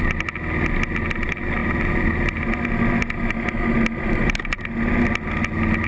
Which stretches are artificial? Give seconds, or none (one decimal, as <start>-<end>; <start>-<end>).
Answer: none